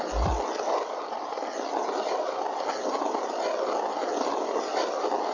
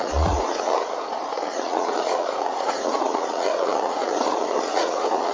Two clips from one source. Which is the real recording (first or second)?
first